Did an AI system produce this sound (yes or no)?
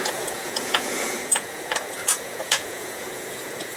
yes